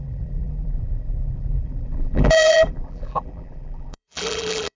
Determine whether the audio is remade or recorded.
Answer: remade